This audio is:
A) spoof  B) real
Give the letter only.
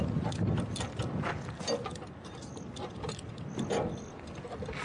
B